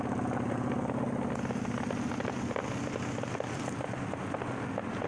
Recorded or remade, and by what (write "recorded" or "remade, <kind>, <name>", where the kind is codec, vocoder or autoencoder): recorded